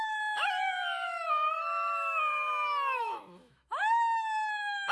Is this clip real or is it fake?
fake